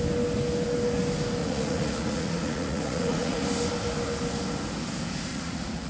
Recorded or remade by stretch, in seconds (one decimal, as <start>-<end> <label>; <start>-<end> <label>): 0.0-1.4 recorded; 1.4-3.4 remade; 3.4-5.3 recorded; 5.3-5.9 remade